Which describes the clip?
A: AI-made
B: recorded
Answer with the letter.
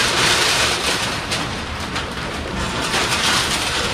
A